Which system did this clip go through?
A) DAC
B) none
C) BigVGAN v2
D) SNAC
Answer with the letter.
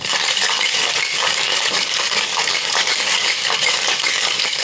A